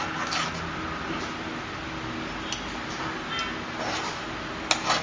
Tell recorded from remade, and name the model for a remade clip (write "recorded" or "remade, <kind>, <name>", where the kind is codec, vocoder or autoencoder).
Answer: recorded